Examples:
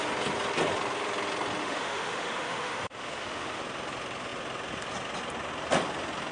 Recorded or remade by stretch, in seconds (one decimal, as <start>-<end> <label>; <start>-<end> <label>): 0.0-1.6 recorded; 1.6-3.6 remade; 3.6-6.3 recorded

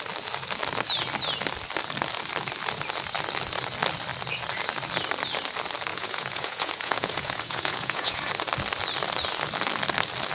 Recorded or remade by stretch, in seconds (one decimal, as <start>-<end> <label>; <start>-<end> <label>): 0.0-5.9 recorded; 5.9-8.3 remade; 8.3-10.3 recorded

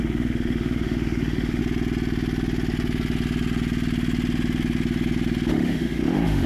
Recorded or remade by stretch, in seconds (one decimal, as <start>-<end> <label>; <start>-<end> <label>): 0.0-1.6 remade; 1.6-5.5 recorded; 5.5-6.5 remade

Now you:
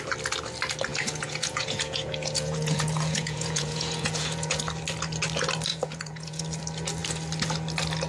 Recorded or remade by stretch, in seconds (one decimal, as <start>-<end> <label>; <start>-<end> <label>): 0.0-0.9 recorded; 0.9-4.6 remade; 4.6-5.7 recorded; 5.7-6.4 remade; 6.4-8.1 recorded

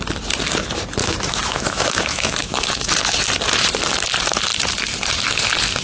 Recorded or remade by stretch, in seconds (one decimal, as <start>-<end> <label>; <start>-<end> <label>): 0.0-1.0 recorded; 1.0-2.9 remade; 2.9-5.8 recorded

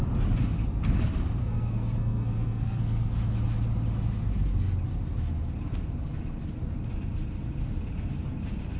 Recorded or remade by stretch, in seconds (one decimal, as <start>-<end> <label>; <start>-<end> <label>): 0.0-1.4 recorded; 1.4-3.1 remade; 3.1-8.8 recorded